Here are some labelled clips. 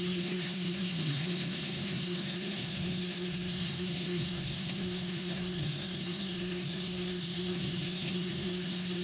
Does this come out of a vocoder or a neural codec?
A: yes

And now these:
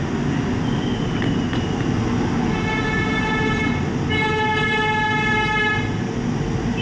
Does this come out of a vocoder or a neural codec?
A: no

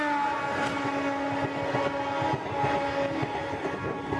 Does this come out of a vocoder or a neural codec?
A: no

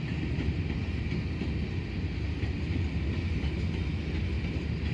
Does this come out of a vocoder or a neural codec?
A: no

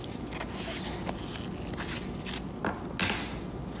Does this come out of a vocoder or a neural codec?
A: no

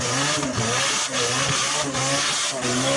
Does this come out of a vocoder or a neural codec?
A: no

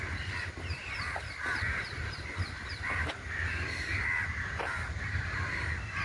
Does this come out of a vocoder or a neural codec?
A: no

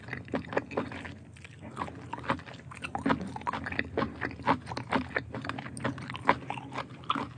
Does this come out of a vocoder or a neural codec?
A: no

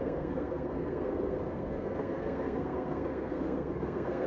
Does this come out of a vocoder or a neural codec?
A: yes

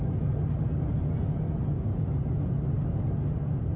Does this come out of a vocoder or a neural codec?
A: no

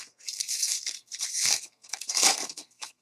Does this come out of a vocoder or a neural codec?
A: yes